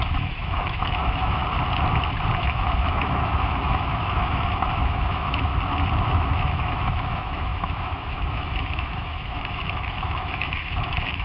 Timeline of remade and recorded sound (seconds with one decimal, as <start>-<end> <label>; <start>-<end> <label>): 0.0-1.4 remade; 1.4-2.4 recorded; 2.4-5.5 remade; 5.5-6.1 recorded; 6.1-11.2 remade